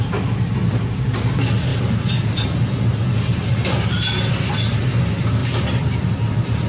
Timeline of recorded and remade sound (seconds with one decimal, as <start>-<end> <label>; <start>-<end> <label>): 0.0-6.7 recorded